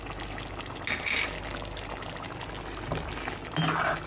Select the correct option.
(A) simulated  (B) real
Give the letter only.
B